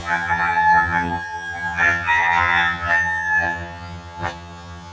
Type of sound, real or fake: fake